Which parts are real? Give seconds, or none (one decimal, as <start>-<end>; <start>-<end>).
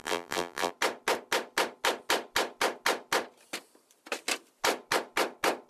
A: 0.7-5.7